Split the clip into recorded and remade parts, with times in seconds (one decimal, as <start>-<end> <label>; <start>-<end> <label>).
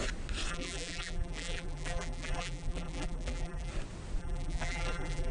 0.0-0.5 recorded; 0.5-3.7 remade; 3.7-4.2 recorded; 4.2-5.3 remade